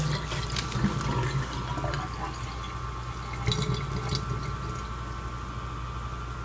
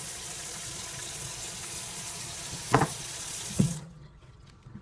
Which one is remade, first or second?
second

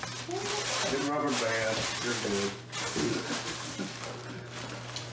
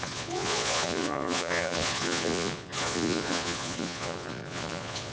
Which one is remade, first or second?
second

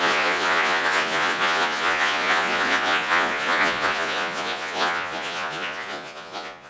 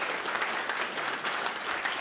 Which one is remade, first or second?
first